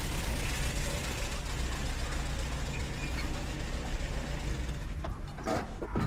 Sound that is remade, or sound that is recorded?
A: recorded